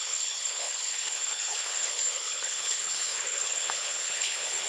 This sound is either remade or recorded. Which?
remade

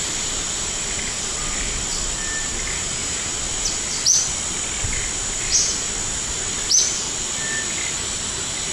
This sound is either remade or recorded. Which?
recorded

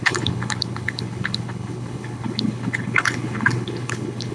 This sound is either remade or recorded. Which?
remade